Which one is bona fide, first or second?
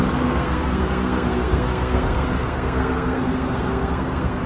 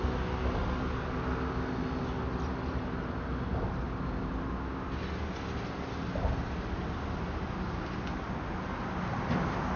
second